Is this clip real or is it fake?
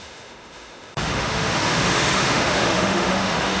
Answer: fake